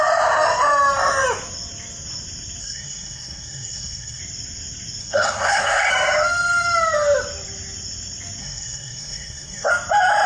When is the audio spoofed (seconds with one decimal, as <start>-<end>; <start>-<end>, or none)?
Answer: 2.6-4.2; 5.0-5.9; 8.4-9.7